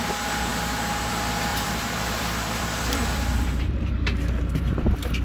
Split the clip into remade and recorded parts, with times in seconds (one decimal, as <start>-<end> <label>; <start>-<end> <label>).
0.0-1.5 recorded; 1.5-4.6 remade; 4.6-5.2 recorded